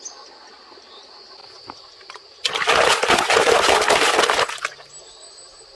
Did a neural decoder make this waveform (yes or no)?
no